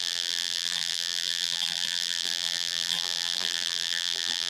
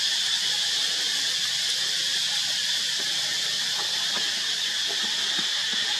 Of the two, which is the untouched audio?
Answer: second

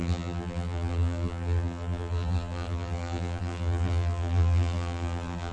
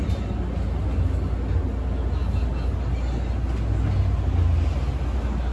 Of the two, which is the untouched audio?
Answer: second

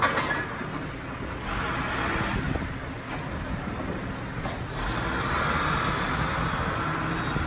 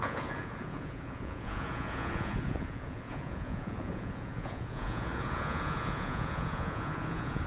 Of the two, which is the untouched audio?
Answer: first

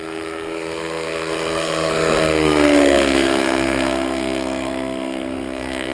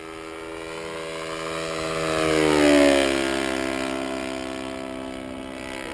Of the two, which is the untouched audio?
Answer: second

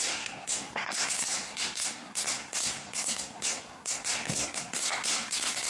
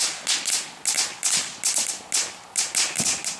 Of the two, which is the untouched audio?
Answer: second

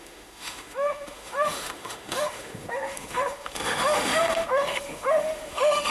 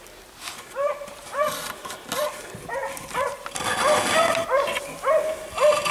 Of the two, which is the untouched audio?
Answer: second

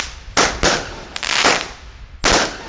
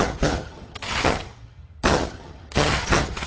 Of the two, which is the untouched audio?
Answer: first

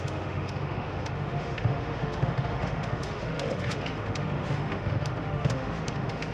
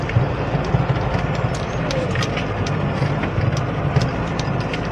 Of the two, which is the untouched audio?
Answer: second